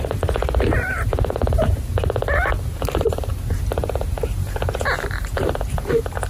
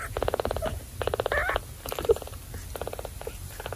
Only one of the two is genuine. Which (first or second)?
second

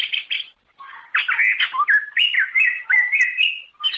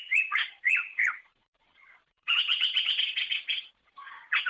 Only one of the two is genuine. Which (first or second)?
first